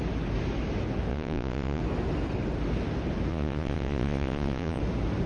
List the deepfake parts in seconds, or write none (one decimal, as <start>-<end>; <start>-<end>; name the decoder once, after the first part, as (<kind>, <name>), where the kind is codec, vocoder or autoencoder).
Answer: 1.1-1.8 (vocoder, Vocos); 3.3-4.8